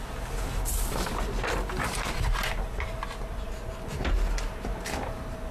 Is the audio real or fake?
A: real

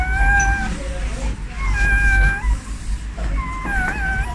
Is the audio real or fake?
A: real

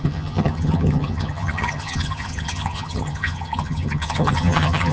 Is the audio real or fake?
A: fake